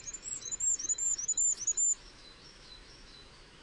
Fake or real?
fake